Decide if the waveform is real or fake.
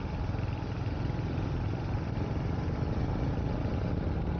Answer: real